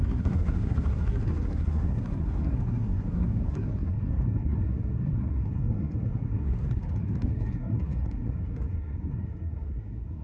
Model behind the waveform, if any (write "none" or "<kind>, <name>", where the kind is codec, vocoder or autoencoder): codec, SNAC